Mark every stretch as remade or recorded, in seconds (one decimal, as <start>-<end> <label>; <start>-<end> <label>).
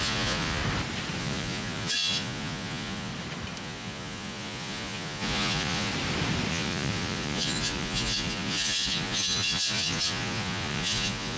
0.0-0.6 remade; 0.6-1.2 recorded; 1.2-3.1 remade; 3.1-3.6 recorded; 3.6-5.9 remade; 5.9-6.5 recorded; 6.5-11.4 remade